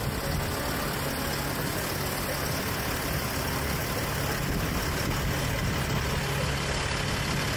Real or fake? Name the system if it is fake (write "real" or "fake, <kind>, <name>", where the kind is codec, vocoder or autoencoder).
real